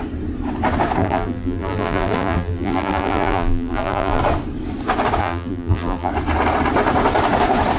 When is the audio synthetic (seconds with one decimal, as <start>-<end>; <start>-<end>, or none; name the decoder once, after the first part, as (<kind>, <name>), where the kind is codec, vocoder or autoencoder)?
1.0-4.2 (vocoder, BigVGAN v2); 5.2-6.1